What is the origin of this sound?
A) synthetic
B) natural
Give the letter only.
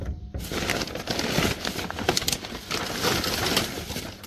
B